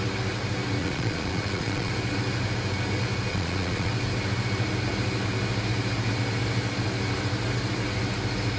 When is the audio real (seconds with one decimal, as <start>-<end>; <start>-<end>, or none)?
0.0-0.8; 1.9-3.3; 3.9-8.6